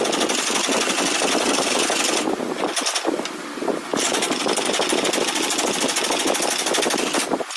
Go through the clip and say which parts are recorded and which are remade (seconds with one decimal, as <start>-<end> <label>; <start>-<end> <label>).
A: 0.0-3.9 recorded; 3.9-5.2 remade; 5.2-7.6 recorded